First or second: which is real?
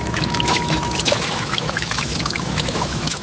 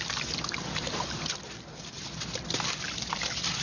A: second